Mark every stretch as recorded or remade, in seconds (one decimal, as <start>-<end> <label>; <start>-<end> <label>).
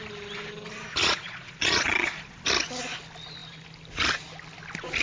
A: 0.0-1.0 recorded; 1.0-2.4 remade; 2.4-5.0 recorded